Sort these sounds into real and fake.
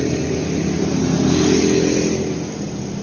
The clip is real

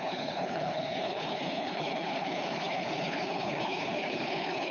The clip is fake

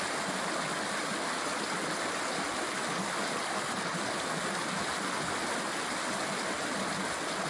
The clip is real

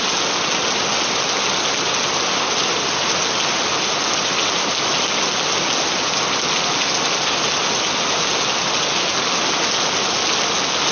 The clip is real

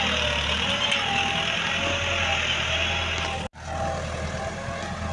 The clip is real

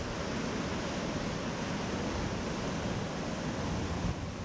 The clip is real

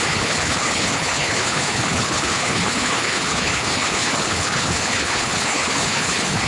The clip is fake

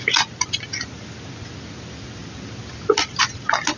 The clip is real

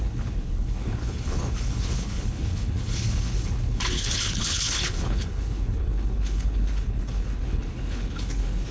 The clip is fake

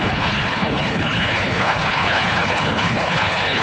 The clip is fake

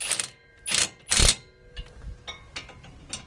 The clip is real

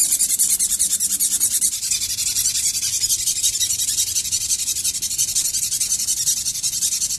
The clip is real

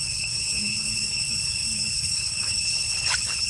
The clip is fake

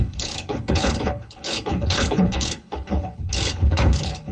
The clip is fake